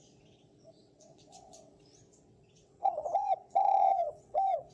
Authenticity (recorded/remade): remade